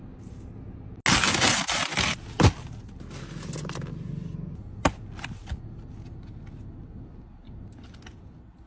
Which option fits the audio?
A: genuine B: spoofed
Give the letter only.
A